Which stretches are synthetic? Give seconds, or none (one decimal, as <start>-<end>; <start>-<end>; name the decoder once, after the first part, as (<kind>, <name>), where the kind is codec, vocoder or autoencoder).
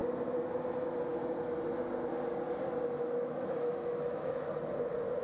3.0-4.5 (autoencoder, DAC-VAE)